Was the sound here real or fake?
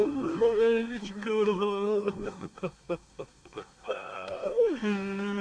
fake